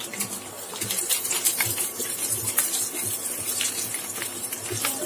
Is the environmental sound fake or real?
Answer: fake